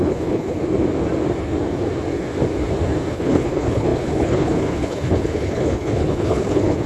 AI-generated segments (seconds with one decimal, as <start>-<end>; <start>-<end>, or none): 0.0-0.6; 3.1-6.9